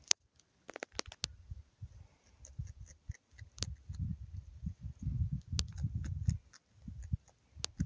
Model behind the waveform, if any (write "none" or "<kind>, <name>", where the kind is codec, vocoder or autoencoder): none